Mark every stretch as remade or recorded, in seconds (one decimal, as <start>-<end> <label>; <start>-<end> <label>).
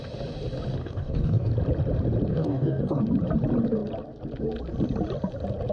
0.0-0.8 recorded; 0.8-1.5 remade; 1.5-2.3 recorded; 2.3-3.0 remade; 3.0-5.7 recorded